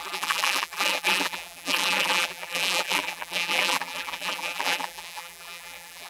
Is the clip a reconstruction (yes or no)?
yes